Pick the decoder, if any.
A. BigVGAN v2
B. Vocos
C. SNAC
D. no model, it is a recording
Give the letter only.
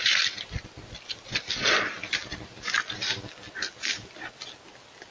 A